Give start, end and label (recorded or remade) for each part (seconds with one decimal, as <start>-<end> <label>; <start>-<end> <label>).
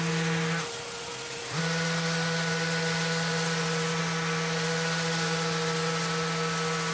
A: 0.0-6.9 recorded